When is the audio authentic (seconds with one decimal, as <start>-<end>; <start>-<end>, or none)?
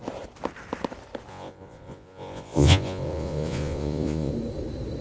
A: 0.0-1.3; 4.3-5.0